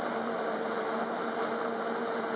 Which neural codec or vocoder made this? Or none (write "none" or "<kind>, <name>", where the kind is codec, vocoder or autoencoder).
vocoder, BigVGAN v2